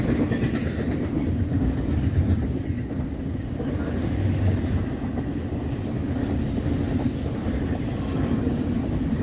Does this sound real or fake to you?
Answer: real